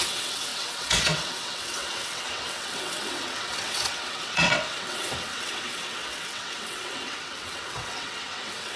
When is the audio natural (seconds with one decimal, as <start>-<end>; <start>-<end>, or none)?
none